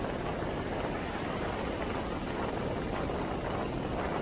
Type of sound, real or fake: real